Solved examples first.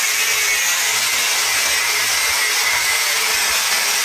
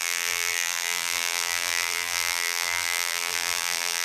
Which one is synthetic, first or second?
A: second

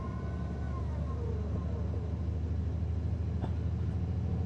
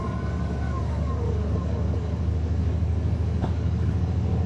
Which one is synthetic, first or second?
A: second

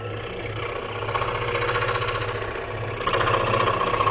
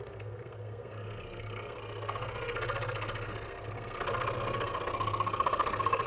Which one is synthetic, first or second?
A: second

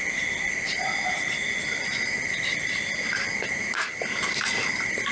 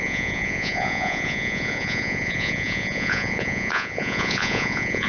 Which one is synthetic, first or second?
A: second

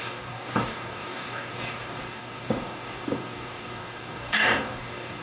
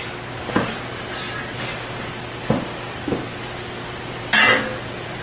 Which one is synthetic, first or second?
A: first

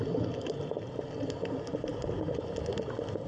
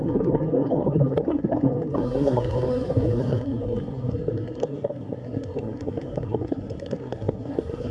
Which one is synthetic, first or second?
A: second